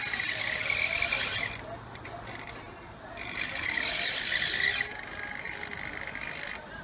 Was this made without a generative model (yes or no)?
yes